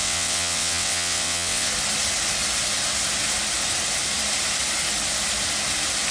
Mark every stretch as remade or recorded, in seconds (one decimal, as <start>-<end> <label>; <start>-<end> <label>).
0.0-1.7 remade; 1.7-6.1 recorded